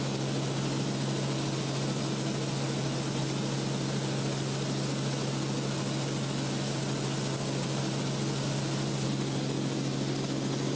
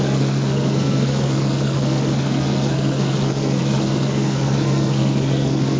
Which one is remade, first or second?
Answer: second